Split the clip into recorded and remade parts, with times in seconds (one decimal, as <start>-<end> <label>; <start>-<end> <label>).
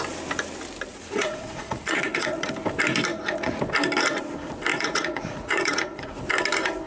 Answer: 0.0-0.9 recorded; 0.9-2.5 remade; 2.5-3.1 recorded; 3.1-3.6 remade; 3.6-4.7 recorded; 4.7-6.2 remade; 6.2-6.9 recorded